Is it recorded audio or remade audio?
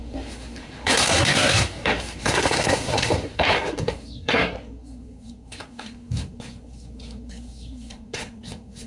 remade